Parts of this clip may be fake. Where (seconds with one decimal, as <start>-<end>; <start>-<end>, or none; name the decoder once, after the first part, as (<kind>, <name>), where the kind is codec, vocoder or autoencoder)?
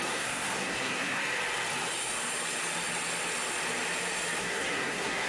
0.0-1.2 (codec, SNAC); 4.4-5.3